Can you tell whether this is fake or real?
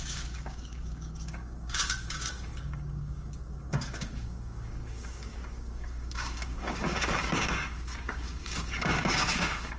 fake